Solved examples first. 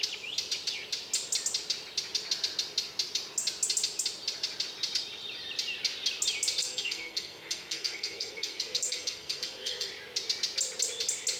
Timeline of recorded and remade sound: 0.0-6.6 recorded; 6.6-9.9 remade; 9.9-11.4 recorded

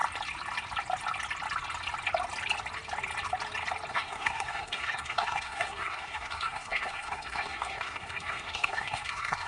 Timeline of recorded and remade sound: 0.0-3.9 recorded; 3.9-9.5 remade

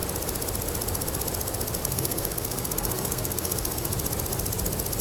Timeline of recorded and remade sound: 0.0-1.8 recorded; 1.8-3.9 remade; 3.9-5.0 recorded

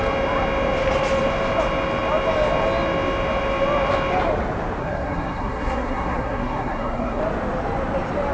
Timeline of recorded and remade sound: 0.0-4.8 recorded; 4.8-7.2 remade; 7.2-8.3 recorded

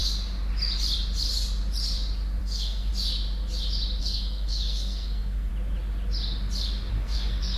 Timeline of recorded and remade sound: 0.0-2.4 recorded; 2.4-2.9 remade; 2.9-4.0 recorded; 4.0-5.5 remade; 5.5-6.9 recorded; 6.9-7.6 remade

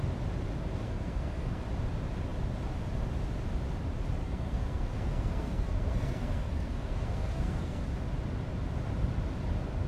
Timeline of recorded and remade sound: 0.0-0.8 recorded; 0.8-1.6 remade; 1.6-4.2 recorded; 4.2-7.8 remade; 7.8-9.9 recorded